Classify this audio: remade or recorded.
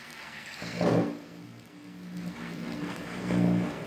remade